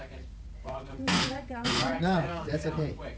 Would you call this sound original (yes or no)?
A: no